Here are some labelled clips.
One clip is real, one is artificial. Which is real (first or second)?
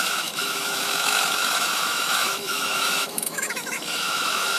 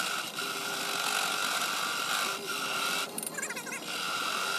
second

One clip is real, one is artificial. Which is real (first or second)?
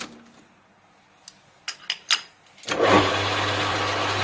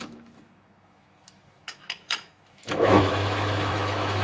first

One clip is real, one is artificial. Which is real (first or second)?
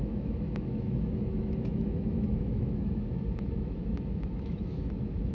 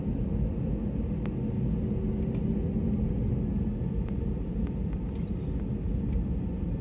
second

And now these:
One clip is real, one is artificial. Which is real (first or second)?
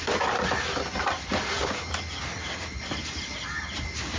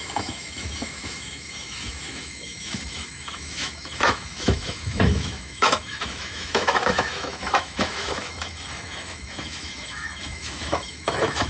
first